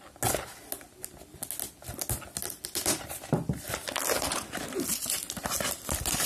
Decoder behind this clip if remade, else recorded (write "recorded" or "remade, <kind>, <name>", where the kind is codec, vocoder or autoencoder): recorded